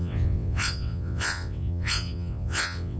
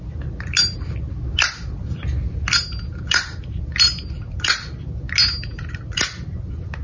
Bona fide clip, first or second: second